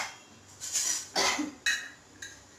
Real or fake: real